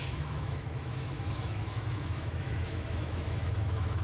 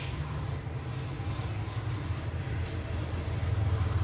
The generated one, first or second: first